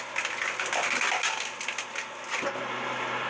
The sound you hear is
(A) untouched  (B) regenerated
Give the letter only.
A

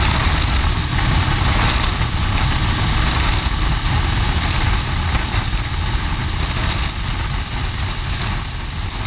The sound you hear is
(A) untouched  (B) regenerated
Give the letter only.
A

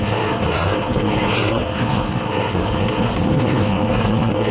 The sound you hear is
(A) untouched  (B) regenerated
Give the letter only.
B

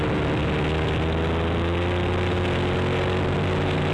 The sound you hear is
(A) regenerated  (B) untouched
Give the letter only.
B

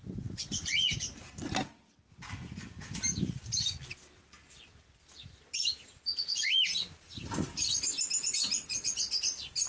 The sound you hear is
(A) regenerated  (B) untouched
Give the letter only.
B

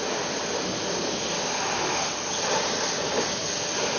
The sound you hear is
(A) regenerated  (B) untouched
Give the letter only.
B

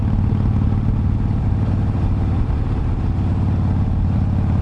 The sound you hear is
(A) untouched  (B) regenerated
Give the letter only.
A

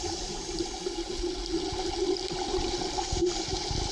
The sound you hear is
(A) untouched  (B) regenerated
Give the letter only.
A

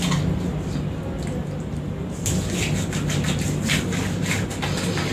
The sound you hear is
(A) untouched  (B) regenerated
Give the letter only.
A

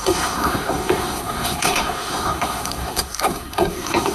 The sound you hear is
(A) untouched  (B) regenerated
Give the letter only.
B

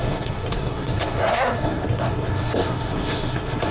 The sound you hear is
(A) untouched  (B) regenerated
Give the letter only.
B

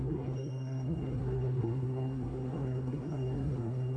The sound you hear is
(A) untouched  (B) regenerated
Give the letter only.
B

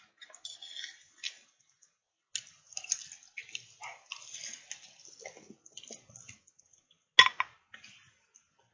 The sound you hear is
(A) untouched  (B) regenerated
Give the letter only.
A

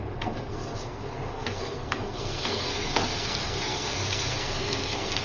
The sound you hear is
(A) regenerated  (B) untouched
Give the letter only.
A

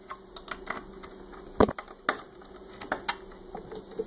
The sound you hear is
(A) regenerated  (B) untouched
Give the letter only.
B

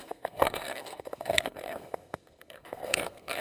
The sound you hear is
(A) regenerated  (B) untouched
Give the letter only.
A